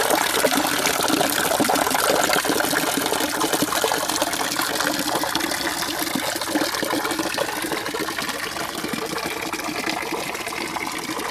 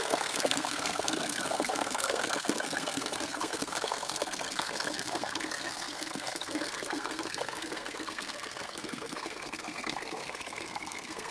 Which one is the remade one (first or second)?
second